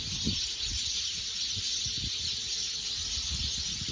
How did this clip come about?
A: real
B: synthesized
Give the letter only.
A